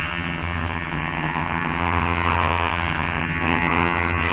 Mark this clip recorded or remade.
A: remade